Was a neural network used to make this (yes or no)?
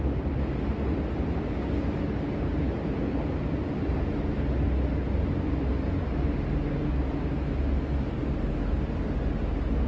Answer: no